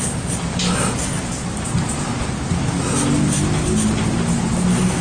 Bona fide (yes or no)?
yes